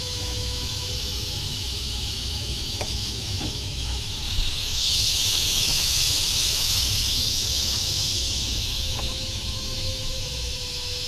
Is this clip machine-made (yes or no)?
yes